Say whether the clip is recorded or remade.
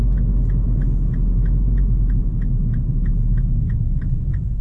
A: recorded